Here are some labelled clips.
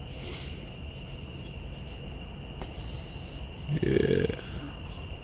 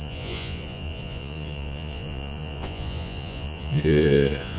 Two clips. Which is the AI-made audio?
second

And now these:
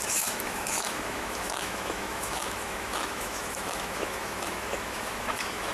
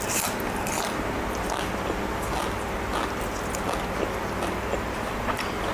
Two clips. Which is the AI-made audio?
first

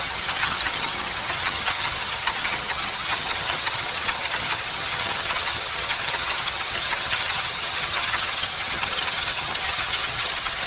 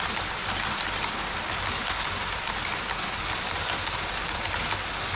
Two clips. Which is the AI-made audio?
first